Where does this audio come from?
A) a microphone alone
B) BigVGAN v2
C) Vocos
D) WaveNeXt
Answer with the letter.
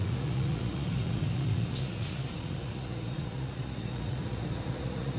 C